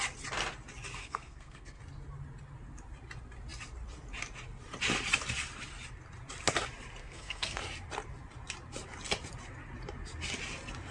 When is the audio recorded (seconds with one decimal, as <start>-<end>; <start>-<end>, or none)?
0.0-1.0; 1.8-7.0; 7.6-10.9